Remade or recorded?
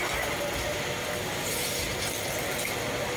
recorded